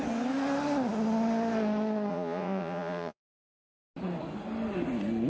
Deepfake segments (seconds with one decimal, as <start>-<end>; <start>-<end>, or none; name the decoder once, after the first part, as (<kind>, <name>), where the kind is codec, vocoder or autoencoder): 2.1-3.4 (vocoder, Vocos)